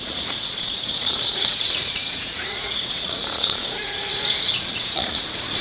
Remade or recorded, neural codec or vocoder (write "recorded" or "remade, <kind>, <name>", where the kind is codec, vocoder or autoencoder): remade, vocoder, Vocos